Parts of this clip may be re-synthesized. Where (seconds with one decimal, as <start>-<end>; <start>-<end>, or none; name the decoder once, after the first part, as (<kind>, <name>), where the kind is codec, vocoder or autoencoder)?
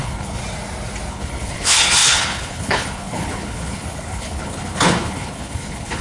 0.0-0.4 (codec, HILCodec); 1.1-6.0